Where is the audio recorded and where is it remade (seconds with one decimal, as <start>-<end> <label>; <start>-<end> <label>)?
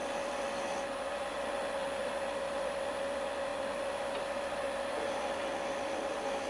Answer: 0.0-6.5 recorded